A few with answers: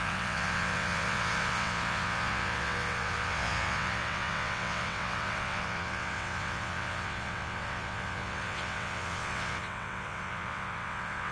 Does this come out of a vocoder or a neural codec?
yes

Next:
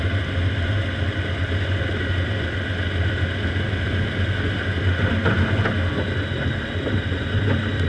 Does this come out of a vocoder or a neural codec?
no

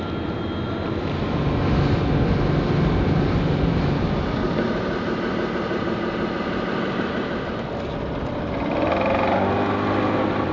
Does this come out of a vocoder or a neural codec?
no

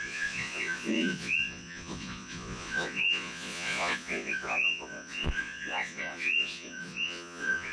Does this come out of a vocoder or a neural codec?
yes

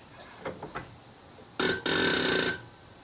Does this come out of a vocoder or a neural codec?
no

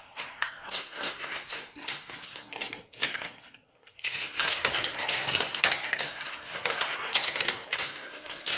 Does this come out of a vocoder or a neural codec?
yes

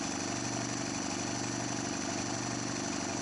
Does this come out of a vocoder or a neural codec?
no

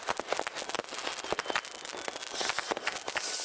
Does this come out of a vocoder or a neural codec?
no